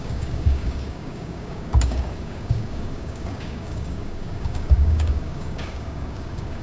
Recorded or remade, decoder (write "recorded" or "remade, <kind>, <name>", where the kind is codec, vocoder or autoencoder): remade, codec, DAC